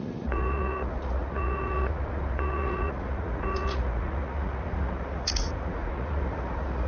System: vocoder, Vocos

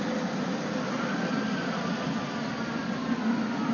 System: none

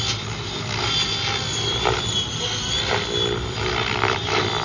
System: none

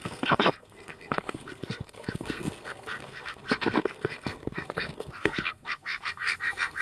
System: codec, SNAC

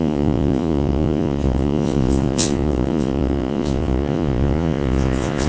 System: vocoder, Vocos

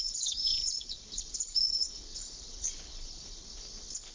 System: codec, HILCodec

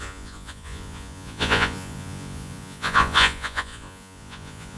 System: vocoder, Vocos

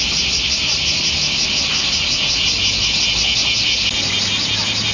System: none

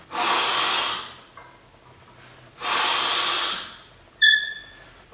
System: none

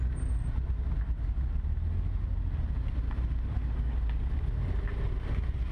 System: none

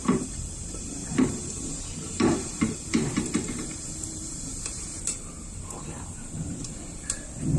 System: vocoder, BigVGAN v2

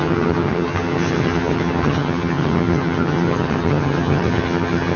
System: vocoder, HiFi-GAN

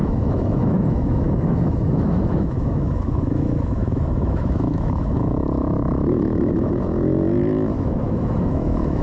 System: autoencoder, DAC-VAE